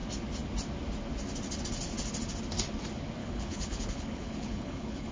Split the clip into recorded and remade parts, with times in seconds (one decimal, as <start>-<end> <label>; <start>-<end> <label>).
0.0-3.2 recorded; 3.2-5.1 remade